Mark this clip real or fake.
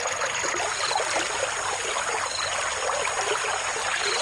real